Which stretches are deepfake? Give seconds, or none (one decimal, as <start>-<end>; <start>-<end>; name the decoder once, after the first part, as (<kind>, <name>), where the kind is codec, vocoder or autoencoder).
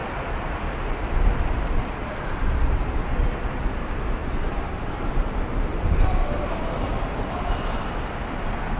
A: 4.2-5.1 (vocoder, BigVGAN v2)